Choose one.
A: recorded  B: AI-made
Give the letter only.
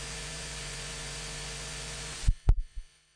B